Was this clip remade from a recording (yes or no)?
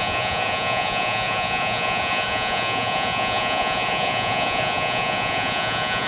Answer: yes